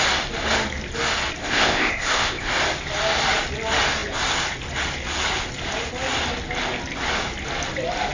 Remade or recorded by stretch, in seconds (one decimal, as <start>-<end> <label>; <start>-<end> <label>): 0.0-1.4 recorded; 1.4-2.5 remade; 2.5-8.1 recorded